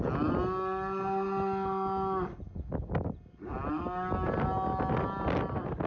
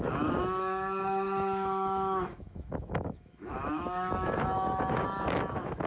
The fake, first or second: second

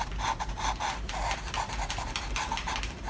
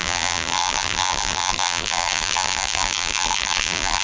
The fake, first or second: second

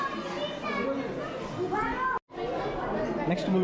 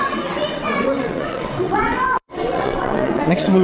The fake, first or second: second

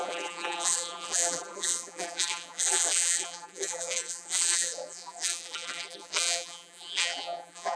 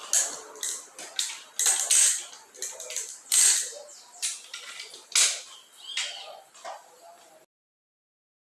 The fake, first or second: first